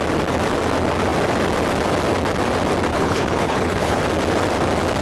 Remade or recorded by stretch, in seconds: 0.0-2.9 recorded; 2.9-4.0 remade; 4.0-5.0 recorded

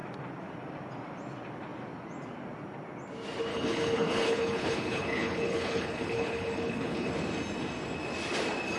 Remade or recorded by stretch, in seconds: 0.0-3.5 recorded; 3.5-7.1 remade; 7.1-8.8 recorded